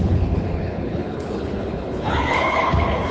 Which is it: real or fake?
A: fake